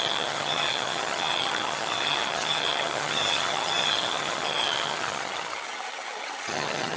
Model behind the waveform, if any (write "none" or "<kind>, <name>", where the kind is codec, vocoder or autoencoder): vocoder, HiFi-GAN